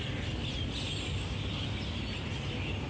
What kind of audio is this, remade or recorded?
recorded